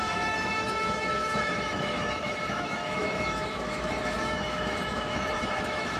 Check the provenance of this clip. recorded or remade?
remade